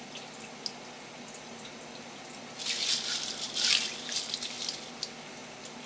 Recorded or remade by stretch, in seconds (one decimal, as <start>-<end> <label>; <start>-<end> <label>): 0.0-5.9 recorded